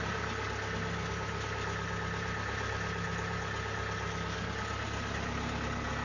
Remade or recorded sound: recorded